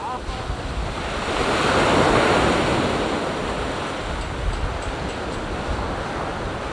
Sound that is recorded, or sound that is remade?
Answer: recorded